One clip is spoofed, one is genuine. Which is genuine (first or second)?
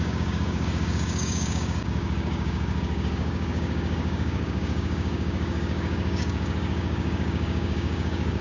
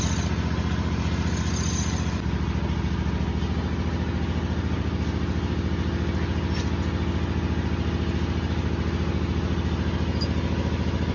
second